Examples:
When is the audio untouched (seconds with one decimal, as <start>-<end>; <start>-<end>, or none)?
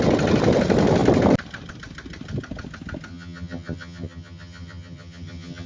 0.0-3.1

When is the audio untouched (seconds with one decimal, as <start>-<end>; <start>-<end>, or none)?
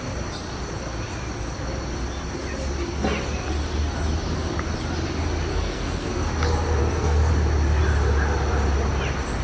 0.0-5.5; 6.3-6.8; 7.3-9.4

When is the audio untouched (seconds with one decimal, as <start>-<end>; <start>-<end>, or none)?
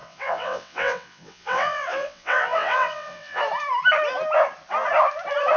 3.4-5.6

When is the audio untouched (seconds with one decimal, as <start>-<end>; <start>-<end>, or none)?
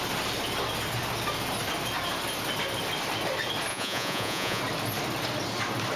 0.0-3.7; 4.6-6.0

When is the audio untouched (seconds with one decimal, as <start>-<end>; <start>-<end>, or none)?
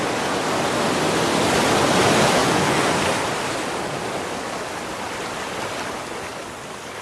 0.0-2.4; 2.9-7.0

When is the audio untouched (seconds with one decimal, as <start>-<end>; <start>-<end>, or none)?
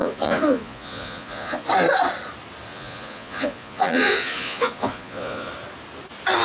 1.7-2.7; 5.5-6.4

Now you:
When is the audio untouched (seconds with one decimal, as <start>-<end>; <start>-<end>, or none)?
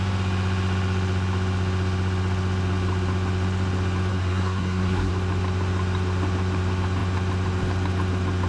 0.0-4.1; 5.1-8.5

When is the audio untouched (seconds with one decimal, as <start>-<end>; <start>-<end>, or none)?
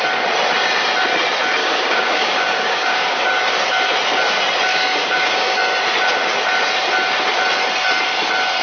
0.0-1.6; 3.2-4.7; 5.6-8.6